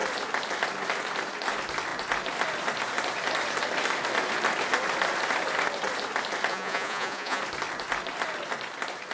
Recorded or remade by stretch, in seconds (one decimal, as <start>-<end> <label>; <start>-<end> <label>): 0.0-6.5 recorded; 6.5-7.4 remade; 7.4-9.1 recorded